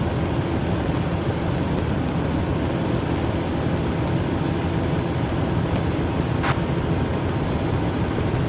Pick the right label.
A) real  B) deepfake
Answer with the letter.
A